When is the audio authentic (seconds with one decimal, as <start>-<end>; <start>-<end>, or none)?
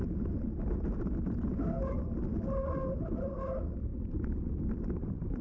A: 0.0-3.2